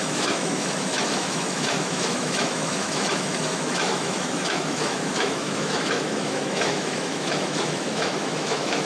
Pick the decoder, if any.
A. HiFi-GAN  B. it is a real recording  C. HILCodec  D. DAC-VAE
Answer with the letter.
D